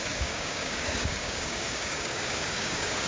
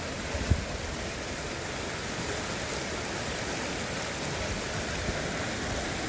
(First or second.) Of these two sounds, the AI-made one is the first